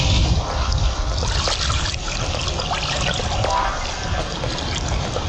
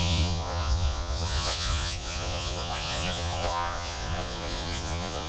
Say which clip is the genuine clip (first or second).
first